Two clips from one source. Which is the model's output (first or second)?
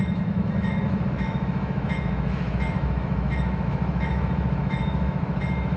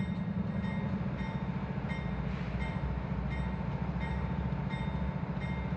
first